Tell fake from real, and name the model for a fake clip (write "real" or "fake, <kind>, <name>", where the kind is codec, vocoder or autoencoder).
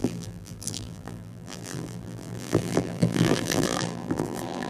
fake, vocoder, BigVGAN v2